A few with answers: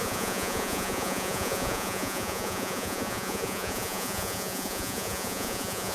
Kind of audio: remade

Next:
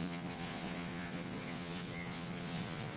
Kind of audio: remade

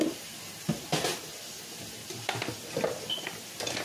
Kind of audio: recorded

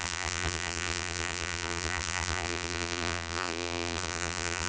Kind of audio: remade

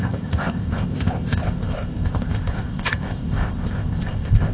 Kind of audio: remade